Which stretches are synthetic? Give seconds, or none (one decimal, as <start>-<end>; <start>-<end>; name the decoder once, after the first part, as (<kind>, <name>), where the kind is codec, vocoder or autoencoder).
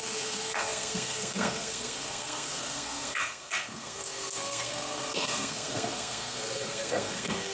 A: 0.0-7.5 (codec, SNAC)